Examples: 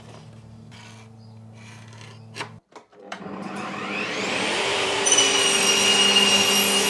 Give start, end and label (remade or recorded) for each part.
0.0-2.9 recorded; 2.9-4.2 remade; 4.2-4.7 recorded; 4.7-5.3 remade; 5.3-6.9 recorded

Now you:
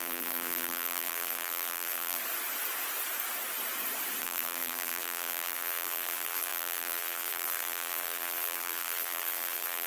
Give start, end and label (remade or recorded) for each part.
0.0-2.2 remade; 2.2-4.2 recorded; 4.2-9.9 remade

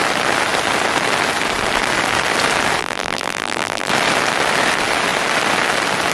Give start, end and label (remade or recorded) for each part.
0.0-2.8 recorded; 2.8-3.9 remade; 3.9-6.1 recorded

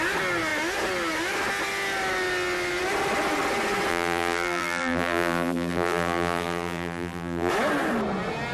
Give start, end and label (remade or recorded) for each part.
0.0-3.9 recorded; 3.9-7.5 remade; 7.5-8.5 recorded

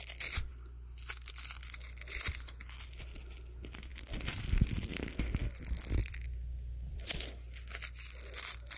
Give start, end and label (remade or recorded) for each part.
0.0-6.0 recorded; 6.0-7.1 remade; 7.1-8.8 recorded